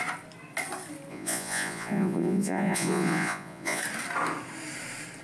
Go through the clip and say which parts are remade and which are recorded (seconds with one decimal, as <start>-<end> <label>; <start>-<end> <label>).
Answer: 0.0-1.1 recorded; 1.1-3.8 remade; 3.8-5.2 recorded